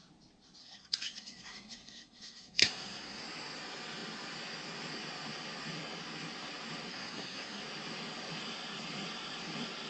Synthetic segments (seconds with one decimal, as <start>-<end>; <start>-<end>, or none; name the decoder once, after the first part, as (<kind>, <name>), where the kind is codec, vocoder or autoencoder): 0.6-3.2 (codec, SNAC); 6.9-7.6